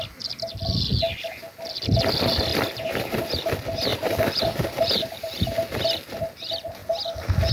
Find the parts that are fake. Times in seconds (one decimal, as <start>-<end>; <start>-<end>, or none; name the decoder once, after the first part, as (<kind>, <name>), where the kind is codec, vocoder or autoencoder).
2.5-3.5 (vocoder, BigVGAN v2); 3.9-5.4